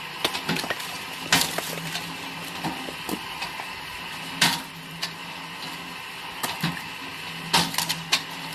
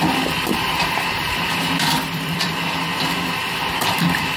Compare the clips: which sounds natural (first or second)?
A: first